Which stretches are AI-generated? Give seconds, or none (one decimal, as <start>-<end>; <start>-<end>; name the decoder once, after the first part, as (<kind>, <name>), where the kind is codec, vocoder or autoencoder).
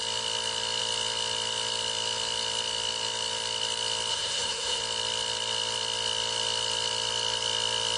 4.1-4.8 (codec, SNAC)